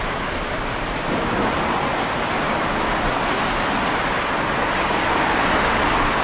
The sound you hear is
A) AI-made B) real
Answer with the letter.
B